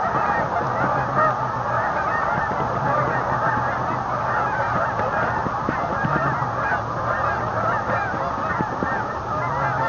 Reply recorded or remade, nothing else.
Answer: recorded